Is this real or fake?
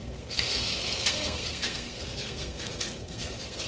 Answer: fake